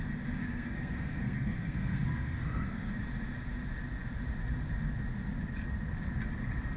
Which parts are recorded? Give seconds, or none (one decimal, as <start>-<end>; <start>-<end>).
0.0-0.4; 2.9-6.8